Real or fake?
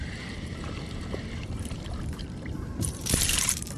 fake